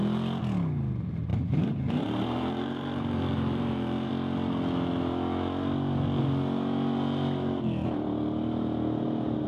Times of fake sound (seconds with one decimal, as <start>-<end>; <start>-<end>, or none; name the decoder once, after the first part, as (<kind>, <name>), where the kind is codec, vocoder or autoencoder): 1.3-4.1 (vocoder, BigVGAN v2)